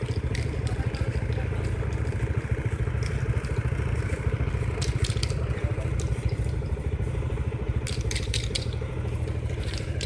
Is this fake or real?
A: fake